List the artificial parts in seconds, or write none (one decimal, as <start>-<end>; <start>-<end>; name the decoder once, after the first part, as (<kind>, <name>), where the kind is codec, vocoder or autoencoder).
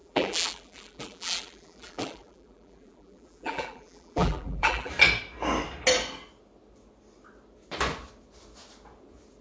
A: 0.0-4.9 (vocoder, BigVGAN v2)